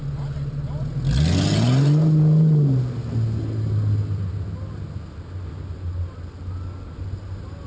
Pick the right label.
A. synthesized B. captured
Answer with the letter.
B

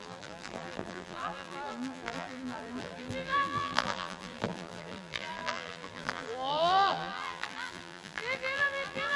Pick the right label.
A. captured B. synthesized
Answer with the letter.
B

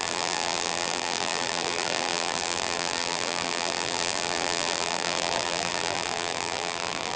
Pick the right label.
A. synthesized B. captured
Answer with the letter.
A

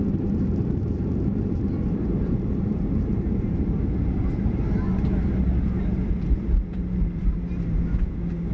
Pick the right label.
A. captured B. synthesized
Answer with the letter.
B